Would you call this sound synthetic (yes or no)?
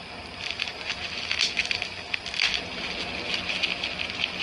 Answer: no